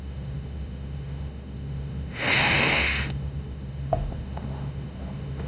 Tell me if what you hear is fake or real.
fake